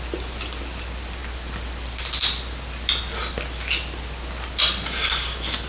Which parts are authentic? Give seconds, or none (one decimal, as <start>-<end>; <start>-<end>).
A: 0.0-5.7